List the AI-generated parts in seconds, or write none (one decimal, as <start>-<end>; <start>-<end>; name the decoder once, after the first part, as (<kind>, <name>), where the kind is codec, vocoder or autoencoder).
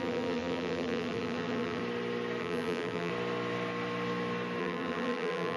0.0-1.8 (vocoder, BigVGAN v2); 2.4-3.1; 4.6-5.6